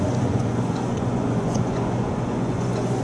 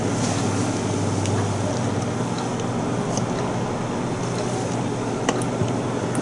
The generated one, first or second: first